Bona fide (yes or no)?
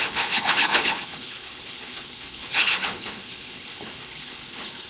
no